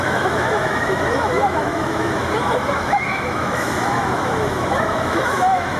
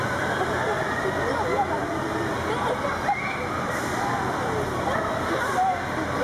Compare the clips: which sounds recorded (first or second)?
second